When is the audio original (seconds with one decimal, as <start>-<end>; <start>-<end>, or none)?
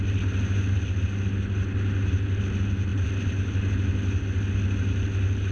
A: 0.0-5.5